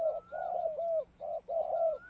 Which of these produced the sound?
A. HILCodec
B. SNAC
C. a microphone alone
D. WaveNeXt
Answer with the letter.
C